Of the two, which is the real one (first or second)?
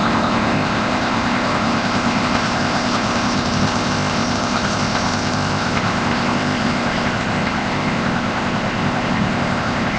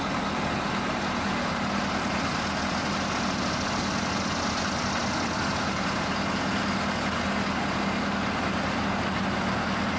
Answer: second